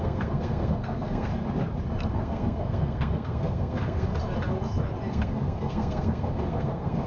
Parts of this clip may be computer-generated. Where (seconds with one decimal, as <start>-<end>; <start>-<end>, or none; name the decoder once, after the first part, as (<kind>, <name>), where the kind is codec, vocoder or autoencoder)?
0.0-1.3 (codec, SNAC); 2.1-4.1; 5.1-7.1